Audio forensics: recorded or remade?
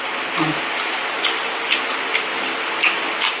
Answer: recorded